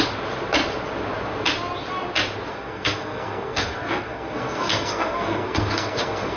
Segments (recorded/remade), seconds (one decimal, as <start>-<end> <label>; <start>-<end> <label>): 0.0-2.5 recorded; 2.5-6.4 remade